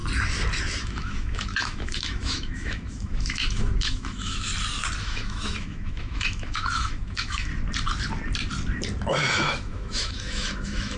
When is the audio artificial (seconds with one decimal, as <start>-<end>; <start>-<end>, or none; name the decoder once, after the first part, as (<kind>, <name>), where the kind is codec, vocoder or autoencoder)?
0.8-4.5 (autoencoder, DAC-VAE); 5.0-7.5; 9.1-11.0